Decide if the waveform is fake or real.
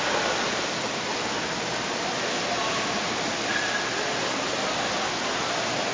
real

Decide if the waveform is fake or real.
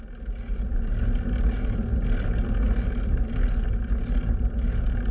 real